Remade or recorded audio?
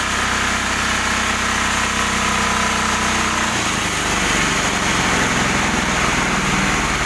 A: recorded